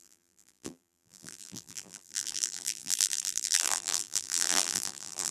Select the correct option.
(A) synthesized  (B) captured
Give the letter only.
A